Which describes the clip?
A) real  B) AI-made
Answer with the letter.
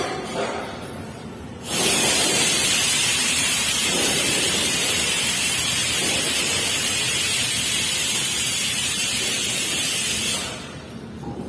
B